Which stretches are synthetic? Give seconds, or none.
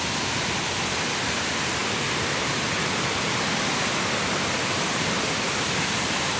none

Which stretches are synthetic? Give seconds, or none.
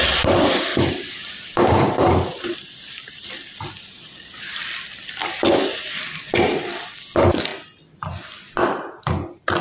0.7-4.3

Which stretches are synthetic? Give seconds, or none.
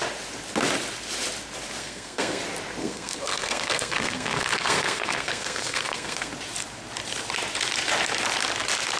1.8-2.4; 2.8-6.3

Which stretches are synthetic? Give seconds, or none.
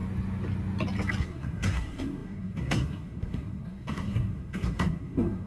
1.2-5.5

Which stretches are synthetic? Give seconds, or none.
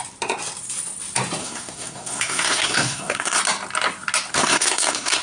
1.4-3.4; 4.3-5.2